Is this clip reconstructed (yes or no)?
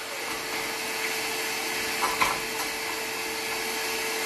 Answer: no